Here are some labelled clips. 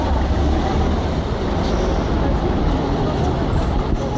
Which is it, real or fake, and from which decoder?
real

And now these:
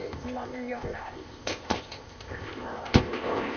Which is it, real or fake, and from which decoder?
fake, codec, ZipCodec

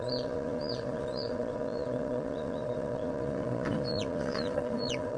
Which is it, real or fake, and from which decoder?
fake, vocoder, Vocos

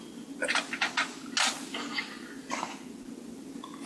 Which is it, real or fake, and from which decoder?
real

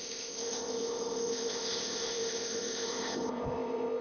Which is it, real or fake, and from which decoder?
fake, codec, ZipCodec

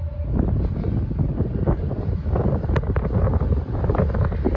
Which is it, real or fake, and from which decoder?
real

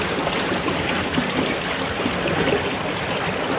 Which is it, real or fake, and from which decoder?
real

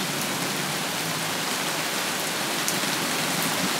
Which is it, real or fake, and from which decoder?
real